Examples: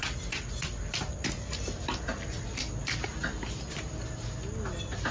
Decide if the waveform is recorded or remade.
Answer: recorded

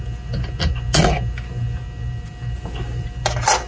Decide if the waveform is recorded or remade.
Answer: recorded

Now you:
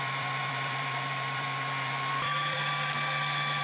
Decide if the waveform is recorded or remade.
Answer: remade